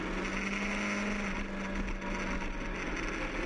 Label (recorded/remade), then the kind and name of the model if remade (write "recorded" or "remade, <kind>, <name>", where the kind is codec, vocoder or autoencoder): recorded